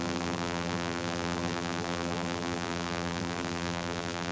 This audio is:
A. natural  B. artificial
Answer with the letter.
B